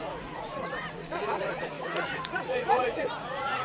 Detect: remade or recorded remade